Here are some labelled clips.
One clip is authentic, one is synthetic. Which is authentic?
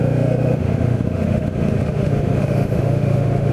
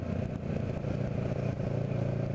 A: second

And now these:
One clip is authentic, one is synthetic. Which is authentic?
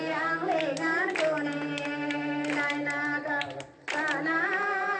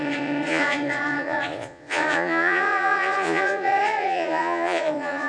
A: first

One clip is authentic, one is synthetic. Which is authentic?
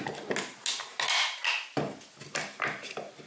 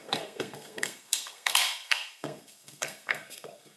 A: first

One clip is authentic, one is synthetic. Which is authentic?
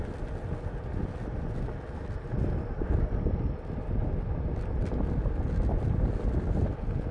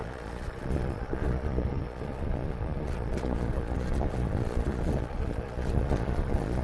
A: first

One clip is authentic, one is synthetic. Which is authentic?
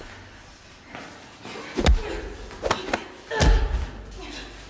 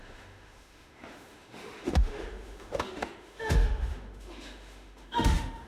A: first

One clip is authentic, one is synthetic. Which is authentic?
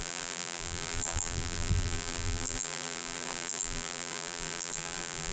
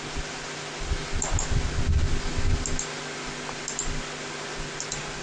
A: second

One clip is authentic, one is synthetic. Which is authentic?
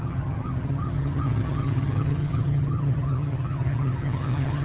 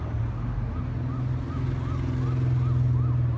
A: second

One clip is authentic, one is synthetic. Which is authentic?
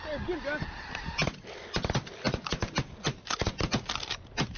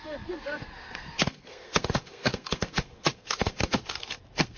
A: first